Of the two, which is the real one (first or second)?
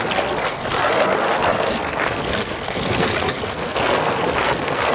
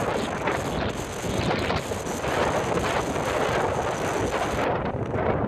second